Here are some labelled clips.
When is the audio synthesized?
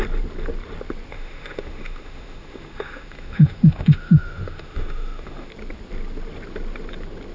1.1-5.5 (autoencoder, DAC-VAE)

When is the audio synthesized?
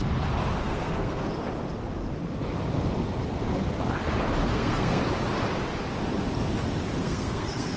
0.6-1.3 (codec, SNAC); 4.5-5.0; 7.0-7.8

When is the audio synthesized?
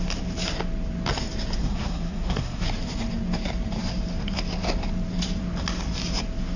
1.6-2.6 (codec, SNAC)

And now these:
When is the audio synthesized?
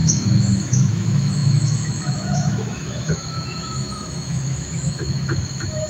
0.0-5.9 (autoencoder, DAC-VAE)